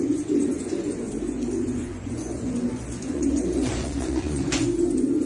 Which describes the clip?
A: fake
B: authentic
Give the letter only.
A